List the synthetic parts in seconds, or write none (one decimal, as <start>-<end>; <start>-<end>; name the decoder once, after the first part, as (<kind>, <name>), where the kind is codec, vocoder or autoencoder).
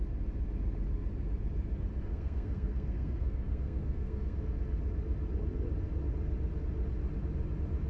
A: 2.1-4.4 (codec, SNAC)